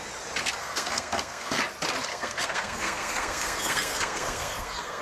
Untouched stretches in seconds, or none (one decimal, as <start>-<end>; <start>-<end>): 0.0-0.6; 1.6-2.1